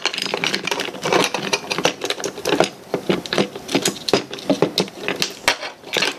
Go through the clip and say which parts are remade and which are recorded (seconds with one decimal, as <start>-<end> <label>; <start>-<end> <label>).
0.0-6.2 recorded